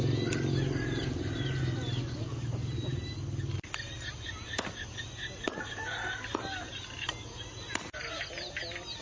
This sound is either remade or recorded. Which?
recorded